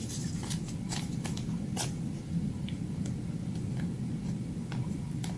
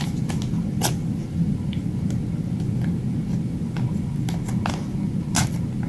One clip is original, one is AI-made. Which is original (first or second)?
second